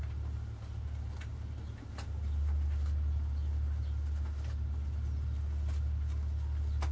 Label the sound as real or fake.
real